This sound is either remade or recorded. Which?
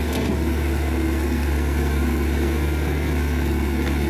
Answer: remade